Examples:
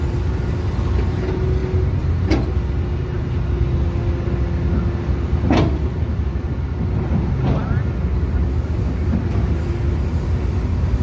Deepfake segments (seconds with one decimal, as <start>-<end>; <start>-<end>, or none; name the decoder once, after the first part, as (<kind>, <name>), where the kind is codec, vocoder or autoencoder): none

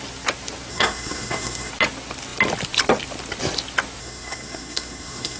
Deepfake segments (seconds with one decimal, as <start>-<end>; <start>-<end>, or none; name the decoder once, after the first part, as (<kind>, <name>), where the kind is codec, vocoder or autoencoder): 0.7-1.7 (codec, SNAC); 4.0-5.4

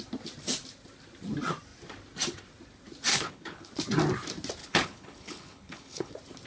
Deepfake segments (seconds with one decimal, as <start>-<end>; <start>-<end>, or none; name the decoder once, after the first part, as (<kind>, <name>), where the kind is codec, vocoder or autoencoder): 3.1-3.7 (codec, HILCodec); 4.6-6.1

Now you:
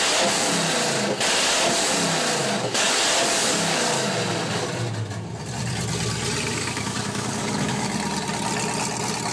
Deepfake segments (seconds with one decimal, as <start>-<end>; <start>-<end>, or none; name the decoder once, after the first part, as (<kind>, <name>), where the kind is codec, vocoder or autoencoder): 2.4-3.0 (codec, DAC); 3.4-4.1; 6.5-7.9

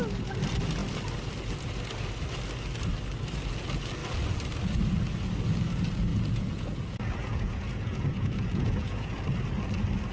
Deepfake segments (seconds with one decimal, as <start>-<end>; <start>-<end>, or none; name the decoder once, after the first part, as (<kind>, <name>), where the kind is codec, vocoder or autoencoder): 6.1-9.2 (vocoder, Vocos)